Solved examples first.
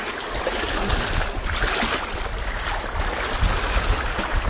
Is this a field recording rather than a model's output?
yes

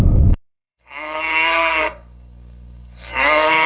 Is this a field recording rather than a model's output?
no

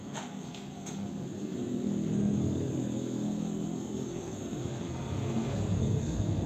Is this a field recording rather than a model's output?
no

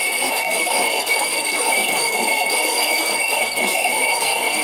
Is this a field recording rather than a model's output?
no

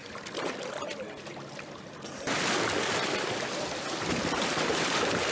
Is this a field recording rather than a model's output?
yes